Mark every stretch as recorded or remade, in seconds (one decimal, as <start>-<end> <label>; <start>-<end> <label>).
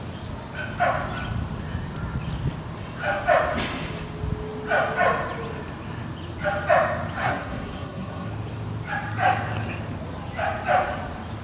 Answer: 0.0-7.2 recorded; 7.2-8.3 remade; 8.3-11.4 recorded